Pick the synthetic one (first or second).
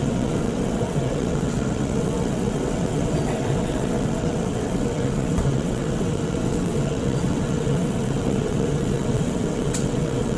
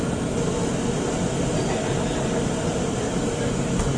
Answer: first